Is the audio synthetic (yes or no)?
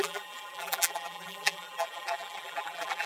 yes